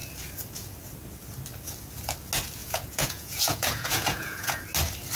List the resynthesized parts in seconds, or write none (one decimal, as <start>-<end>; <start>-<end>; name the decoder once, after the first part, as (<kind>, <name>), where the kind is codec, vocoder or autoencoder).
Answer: 2.6-4.6 (vocoder, Vocos)